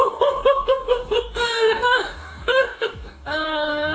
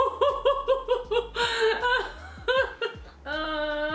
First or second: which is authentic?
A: second